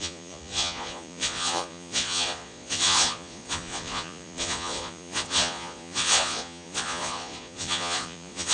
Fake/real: fake